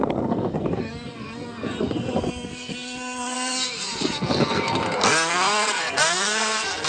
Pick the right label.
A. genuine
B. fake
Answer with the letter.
B